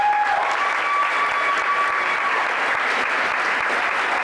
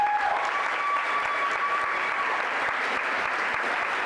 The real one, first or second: first